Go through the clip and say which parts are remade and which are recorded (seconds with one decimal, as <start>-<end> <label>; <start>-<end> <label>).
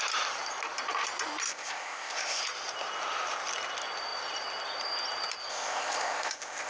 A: 0.0-1.5 recorded; 1.5-2.4 remade; 2.4-5.5 recorded; 5.5-6.7 remade